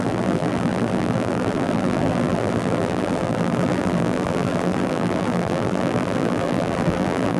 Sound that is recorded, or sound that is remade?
remade